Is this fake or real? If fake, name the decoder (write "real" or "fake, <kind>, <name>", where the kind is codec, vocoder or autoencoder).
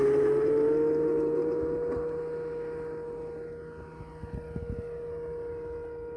real